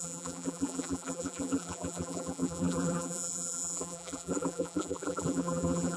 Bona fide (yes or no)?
no